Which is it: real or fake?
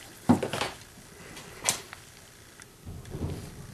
real